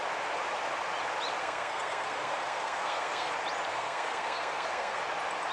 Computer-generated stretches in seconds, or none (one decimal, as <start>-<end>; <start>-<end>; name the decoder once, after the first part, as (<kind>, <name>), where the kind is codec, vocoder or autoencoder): 1.4-3.3 (codec, SNAC); 3.7-5.0